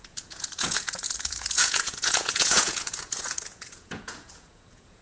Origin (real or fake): fake